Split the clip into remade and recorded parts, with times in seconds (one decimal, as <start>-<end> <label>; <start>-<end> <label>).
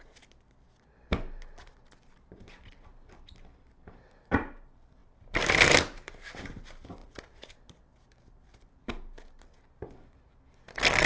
0.0-5.0 recorded; 5.0-6.6 remade; 6.6-7.0 recorded; 7.0-8.9 remade; 8.9-11.1 recorded